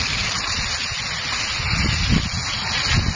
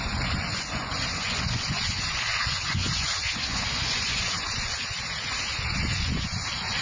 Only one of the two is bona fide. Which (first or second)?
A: first